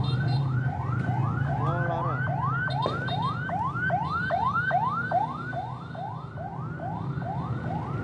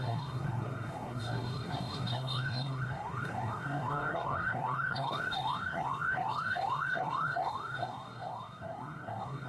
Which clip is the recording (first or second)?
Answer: first